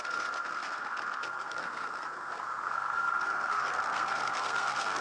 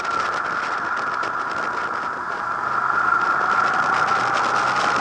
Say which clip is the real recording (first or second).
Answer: second